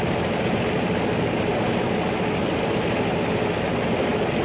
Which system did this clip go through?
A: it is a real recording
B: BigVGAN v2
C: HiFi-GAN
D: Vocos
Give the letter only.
A